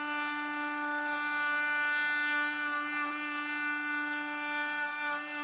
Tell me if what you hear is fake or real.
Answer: real